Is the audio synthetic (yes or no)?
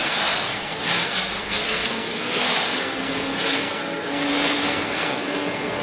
yes